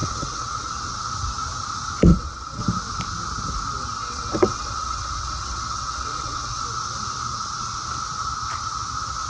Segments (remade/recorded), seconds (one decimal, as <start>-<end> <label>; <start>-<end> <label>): 0.0-0.7 remade; 0.7-2.1 recorded; 2.1-2.6 remade; 2.6-4.0 recorded; 4.0-6.6 remade; 6.6-9.3 recorded